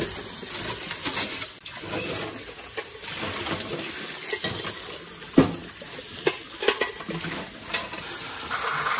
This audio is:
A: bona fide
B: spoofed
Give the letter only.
A